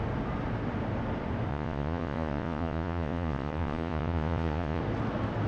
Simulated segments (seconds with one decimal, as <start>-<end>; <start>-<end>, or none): 1.5-4.8